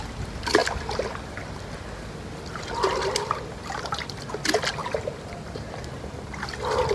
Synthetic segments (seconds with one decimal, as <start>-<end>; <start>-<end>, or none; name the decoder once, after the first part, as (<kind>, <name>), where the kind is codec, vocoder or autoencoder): none